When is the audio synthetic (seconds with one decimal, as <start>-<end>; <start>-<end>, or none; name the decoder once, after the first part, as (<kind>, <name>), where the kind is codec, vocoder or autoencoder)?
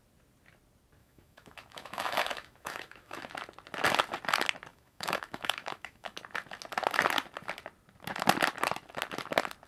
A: 1.0-3.3 (autoencoder, DAC-VAE); 4.7-6.2